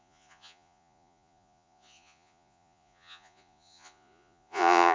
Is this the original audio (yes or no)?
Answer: no